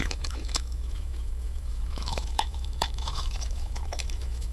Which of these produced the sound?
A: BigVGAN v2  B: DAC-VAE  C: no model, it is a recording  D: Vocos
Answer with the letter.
B